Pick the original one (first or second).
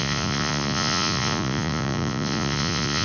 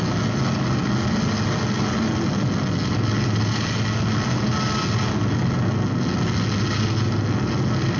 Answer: second